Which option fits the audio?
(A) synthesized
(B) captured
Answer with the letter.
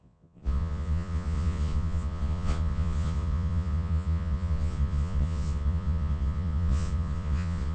A